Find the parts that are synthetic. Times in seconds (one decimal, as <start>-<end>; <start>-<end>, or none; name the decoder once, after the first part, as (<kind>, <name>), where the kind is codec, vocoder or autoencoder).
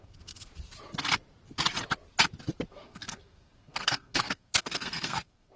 0.0-0.5 (codec, SNAC); 2.7-5.6